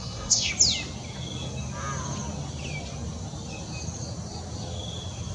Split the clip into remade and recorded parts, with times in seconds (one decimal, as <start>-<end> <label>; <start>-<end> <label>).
0.0-0.5 remade; 0.5-5.3 recorded